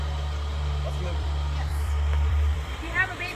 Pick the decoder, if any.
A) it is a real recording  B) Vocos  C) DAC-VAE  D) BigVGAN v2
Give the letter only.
D